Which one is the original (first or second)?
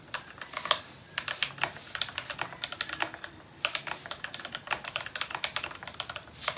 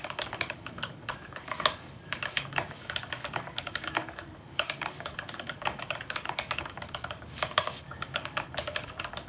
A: first